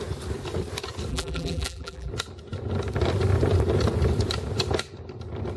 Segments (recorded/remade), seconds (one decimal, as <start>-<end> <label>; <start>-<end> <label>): 0.0-1.1 recorded; 1.1-2.1 remade; 2.1-5.6 recorded